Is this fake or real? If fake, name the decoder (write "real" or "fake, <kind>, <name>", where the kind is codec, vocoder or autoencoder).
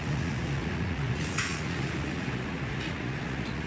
fake, vocoder, Vocos